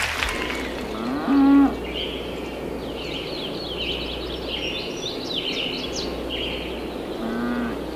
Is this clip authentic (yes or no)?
yes